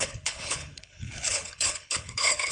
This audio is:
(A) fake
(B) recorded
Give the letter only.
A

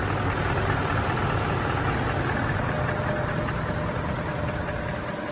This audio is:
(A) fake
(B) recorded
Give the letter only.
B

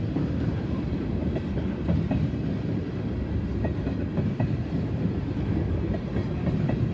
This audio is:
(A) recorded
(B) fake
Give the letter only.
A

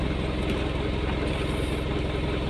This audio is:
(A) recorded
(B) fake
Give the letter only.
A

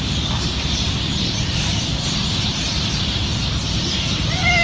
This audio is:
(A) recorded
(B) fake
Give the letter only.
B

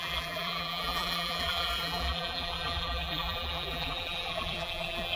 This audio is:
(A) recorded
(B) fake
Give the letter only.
B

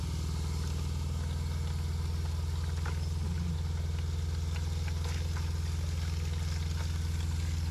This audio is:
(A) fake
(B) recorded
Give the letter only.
B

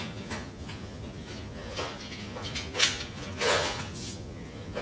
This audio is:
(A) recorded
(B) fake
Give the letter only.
B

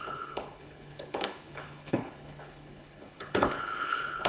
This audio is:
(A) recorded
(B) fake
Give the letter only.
B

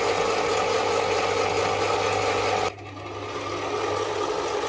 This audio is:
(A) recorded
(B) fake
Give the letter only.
A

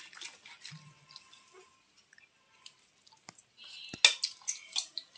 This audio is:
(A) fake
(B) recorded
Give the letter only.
B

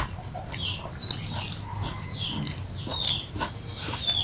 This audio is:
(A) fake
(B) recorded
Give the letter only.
B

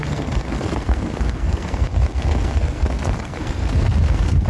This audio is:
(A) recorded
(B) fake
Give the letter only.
B